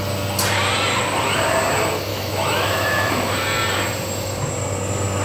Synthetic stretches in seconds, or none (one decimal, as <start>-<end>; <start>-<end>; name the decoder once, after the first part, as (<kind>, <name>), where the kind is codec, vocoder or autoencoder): 2.1-3.1 (autoencoder, DAC-VAE)